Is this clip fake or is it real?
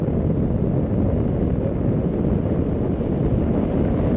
real